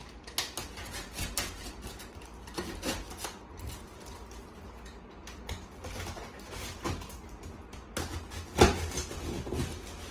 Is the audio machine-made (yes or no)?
no